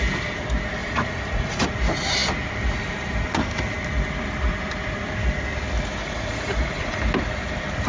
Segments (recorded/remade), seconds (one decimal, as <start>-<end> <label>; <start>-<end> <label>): 0.0-0.8 recorded; 0.8-1.7 remade; 1.7-6.0 recorded; 6.0-7.0 remade; 7.0-7.9 recorded